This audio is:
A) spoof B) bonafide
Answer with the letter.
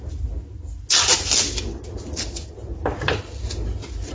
B